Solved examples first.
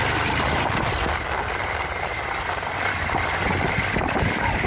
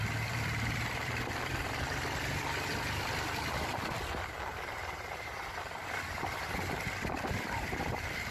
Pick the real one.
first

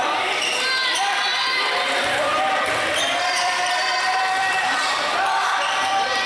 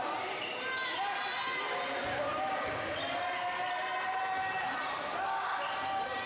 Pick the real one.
second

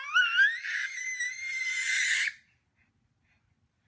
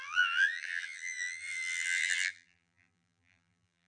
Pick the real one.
first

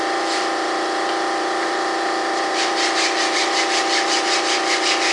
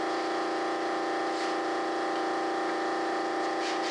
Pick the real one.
second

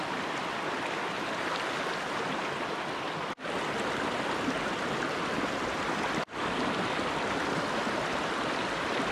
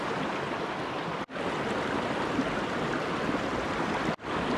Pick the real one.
first